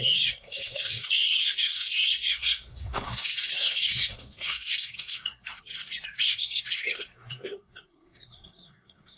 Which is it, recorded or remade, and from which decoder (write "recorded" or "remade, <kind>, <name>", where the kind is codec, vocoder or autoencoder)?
remade, codec, SNAC